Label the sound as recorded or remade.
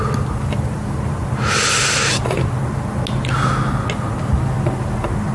recorded